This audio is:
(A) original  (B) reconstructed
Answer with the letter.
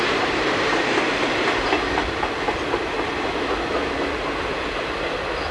A